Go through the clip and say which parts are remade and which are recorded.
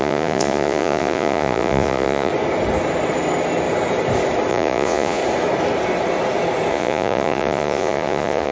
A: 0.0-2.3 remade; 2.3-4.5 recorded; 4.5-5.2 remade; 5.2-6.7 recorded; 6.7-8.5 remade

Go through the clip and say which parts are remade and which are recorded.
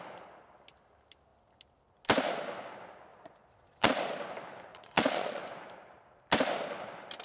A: 0.0-3.1 recorded; 3.1-3.9 remade; 3.9-4.7 recorded; 4.7-5.4 remade; 5.4-7.2 recorded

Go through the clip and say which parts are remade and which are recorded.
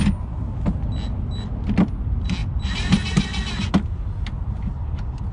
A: 0.0-5.3 recorded